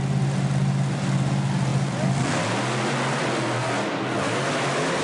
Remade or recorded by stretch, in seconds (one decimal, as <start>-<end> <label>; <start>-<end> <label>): 0.0-5.0 recorded